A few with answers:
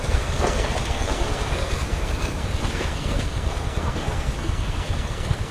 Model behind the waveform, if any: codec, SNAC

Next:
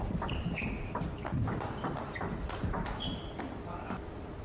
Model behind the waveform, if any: none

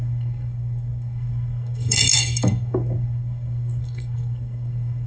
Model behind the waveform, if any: codec, SNAC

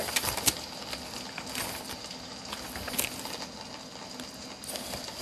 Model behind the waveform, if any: none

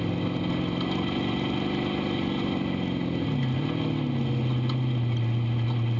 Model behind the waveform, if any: none